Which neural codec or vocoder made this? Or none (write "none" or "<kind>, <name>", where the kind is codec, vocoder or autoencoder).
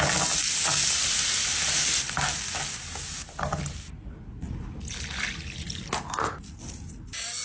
none